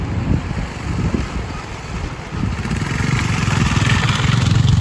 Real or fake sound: real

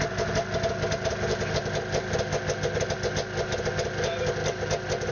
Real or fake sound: real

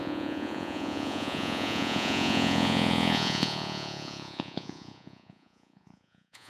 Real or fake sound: fake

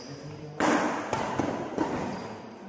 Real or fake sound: real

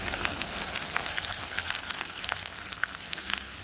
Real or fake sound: fake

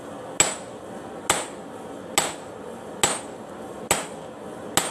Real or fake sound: real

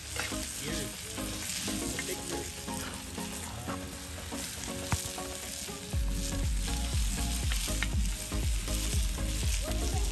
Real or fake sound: real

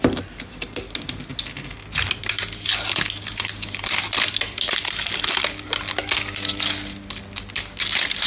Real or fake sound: real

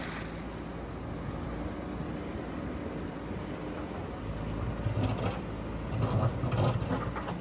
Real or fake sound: real